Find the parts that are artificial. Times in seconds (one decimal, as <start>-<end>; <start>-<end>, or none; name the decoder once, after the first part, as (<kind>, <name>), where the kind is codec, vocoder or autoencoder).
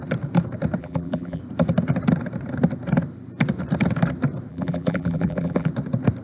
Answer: 0.8-1.4 (vocoder, BigVGAN v2); 4.5-5.7